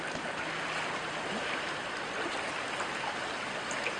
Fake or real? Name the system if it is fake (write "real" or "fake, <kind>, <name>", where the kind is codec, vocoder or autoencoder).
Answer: real